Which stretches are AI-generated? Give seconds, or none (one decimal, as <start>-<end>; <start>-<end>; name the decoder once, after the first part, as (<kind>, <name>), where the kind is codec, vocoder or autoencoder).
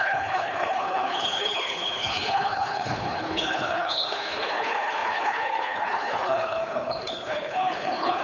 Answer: 0.0-8.2 (codec, HILCodec)